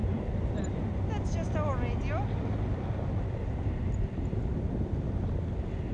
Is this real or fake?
real